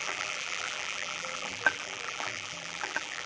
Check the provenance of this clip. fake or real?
fake